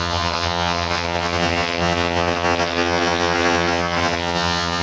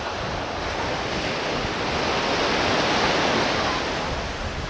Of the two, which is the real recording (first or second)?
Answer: second